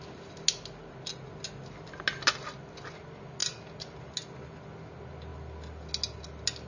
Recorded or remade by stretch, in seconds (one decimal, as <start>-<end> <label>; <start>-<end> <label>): 0.0-6.7 recorded